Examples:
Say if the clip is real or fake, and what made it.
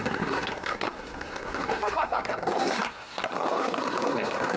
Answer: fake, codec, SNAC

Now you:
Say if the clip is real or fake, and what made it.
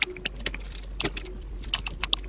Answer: real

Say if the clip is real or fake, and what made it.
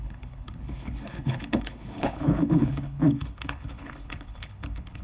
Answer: fake, codec, HILCodec